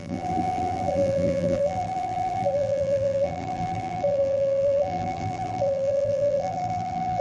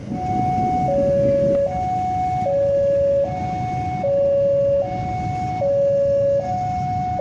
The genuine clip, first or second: second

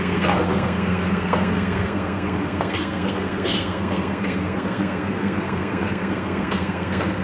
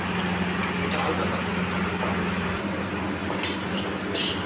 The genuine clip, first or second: second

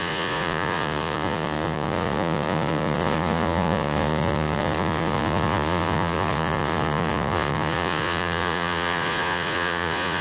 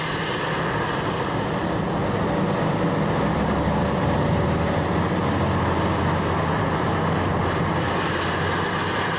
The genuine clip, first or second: second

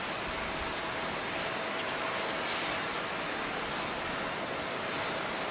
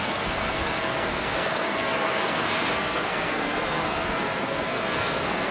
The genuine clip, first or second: first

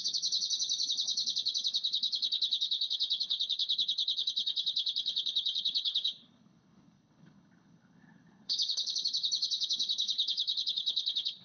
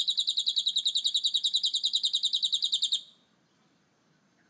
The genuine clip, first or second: second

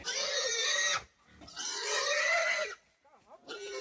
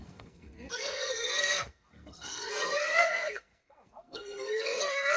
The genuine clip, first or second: first